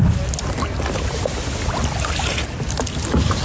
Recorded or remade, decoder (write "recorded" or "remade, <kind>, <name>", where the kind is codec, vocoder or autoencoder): recorded